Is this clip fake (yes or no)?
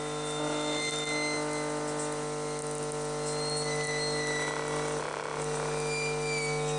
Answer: no